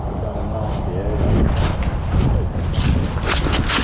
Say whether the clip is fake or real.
real